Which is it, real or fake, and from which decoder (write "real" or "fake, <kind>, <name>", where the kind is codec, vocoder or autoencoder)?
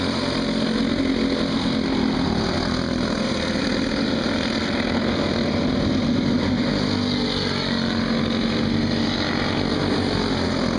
real